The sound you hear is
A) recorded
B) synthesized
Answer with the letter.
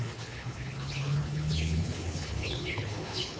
B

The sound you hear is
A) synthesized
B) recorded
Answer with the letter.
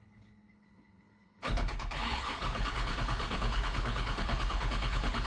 A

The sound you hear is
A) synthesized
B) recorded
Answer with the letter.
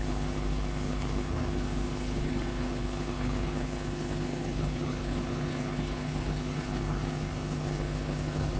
A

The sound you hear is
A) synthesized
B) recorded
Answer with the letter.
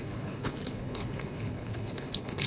A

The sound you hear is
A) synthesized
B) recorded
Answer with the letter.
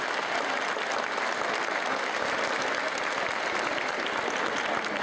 B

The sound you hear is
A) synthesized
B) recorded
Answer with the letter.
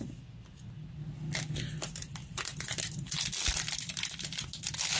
B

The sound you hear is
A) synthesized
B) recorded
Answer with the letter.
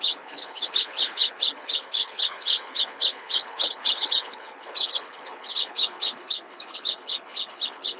A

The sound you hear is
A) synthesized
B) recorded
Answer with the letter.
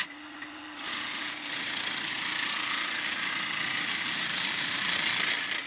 B